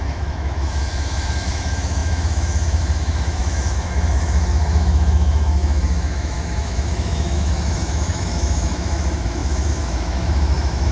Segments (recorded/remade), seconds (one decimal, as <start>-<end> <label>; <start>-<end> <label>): 0.0-10.9 remade